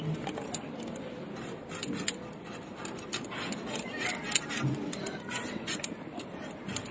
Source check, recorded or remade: recorded